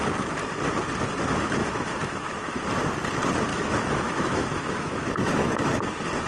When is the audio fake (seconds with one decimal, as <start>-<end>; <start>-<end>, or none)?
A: 1.6-2.6; 3.5-5.7